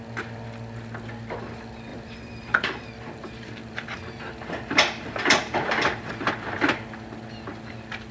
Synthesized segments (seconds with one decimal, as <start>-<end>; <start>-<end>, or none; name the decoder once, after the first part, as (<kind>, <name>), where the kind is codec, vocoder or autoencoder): 1.9-6.1 (vocoder, BigVGAN v2)